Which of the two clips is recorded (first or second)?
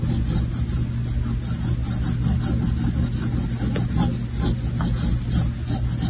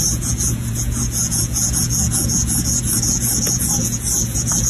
first